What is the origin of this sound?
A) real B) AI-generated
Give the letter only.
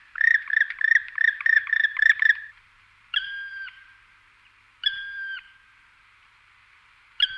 B